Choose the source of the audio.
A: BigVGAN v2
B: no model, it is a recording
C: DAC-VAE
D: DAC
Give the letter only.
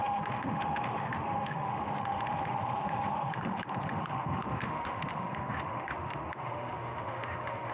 C